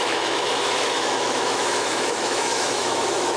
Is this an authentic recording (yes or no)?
no